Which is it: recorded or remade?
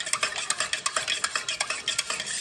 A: recorded